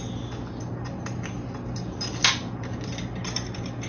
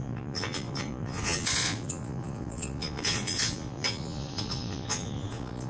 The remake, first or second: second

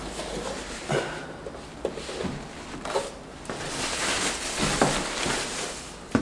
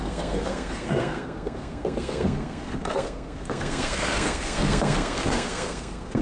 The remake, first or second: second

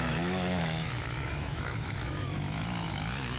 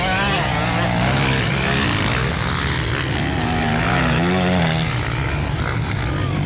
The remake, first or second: first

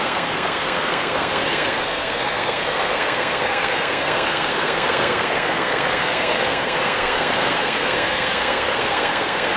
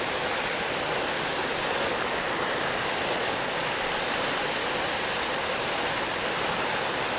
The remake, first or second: first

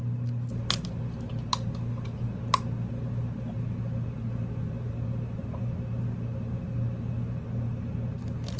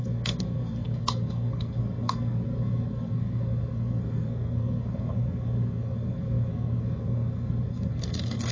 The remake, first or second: second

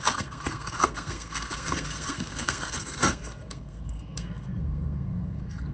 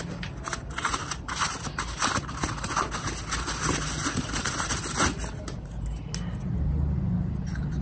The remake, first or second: first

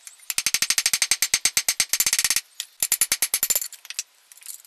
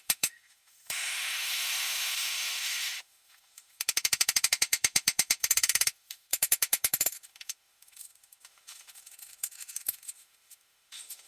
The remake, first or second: second